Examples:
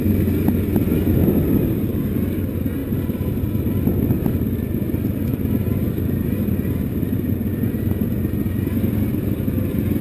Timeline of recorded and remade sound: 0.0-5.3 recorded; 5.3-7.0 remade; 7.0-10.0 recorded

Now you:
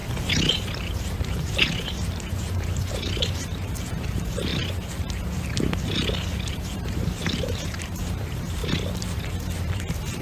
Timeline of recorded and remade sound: 0.0-0.5 recorded; 0.5-4.5 remade; 4.5-6.5 recorded; 6.5-8.6 remade; 8.6-9.3 recorded; 9.3-10.2 remade